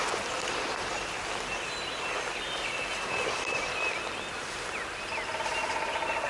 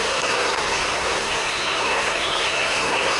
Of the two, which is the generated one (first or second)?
second